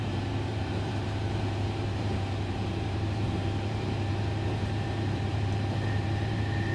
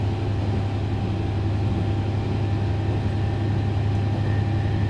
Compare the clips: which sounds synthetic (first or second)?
first